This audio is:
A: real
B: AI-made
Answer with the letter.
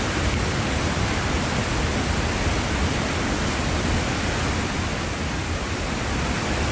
A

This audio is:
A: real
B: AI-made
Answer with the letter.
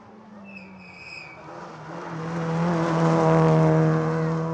A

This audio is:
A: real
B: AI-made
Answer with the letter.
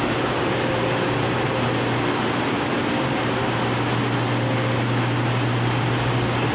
A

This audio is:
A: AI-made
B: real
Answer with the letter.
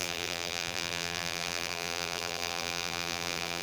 A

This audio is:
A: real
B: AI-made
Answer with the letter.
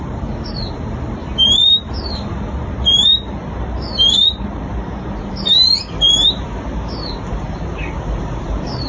B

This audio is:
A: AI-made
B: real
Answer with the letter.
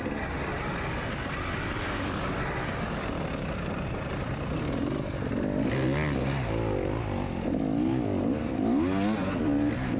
B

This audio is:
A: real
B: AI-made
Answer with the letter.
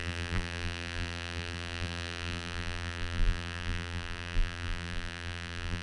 B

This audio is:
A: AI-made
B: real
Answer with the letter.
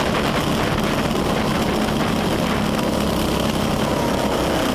B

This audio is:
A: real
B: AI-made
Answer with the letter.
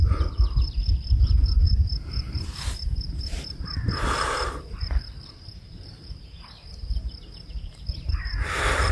B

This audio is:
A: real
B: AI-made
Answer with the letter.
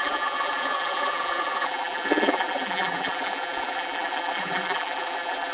B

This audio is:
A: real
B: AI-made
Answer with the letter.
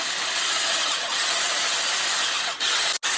A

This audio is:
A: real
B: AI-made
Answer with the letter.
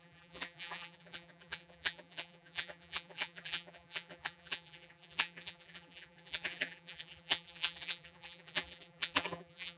B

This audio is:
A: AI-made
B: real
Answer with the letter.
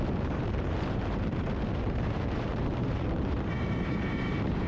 A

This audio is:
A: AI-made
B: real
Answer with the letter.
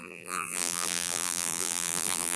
A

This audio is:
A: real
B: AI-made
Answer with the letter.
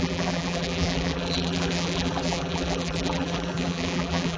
B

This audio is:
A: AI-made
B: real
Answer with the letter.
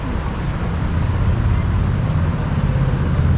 B